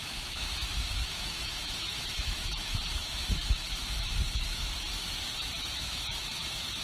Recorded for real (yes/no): no